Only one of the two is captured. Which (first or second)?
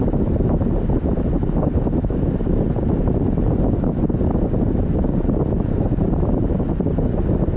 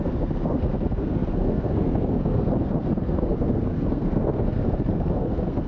first